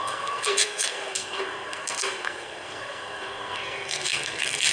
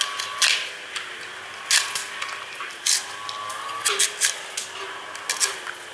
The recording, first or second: second